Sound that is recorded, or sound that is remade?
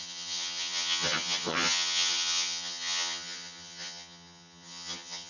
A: remade